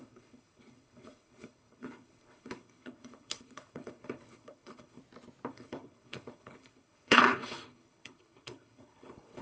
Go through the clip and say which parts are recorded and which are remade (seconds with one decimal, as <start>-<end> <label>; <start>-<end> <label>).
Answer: 0.0-5.0 remade; 5.0-5.5 recorded; 5.5-9.4 remade

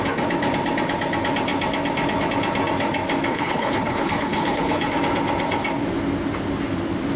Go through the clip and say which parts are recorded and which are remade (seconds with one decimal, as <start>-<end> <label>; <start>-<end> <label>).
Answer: 0.0-3.3 recorded; 3.3-4.9 remade; 4.9-7.2 recorded

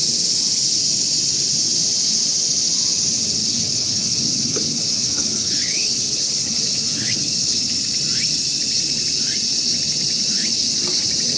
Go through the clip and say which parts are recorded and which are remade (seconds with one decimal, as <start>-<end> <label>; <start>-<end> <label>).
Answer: 0.0-3.4 recorded; 3.4-7.8 remade; 7.8-11.4 recorded

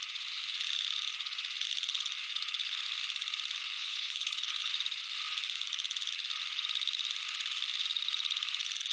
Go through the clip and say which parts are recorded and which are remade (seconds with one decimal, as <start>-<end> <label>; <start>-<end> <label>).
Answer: 0.0-3.8 recorded; 3.8-4.7 remade; 4.7-8.9 recorded

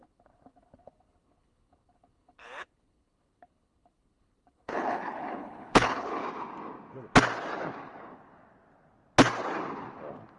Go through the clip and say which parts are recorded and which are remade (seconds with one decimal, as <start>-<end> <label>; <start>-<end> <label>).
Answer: 0.0-6.2 remade; 6.2-10.4 recorded